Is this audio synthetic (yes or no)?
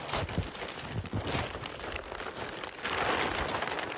no